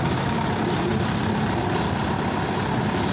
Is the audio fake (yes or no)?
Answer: yes